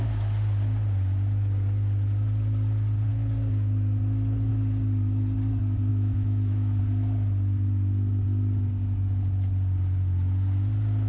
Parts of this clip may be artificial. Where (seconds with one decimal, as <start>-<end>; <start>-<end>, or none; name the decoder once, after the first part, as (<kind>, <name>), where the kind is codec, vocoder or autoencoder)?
5.9-6.8 (autoencoder, DAC-VAE)